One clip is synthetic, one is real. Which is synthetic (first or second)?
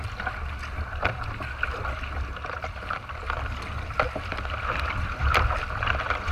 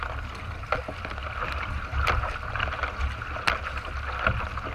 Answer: first